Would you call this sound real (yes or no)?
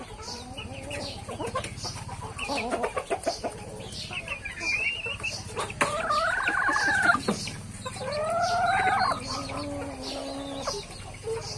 yes